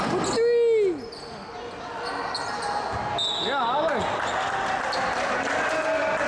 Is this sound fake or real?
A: real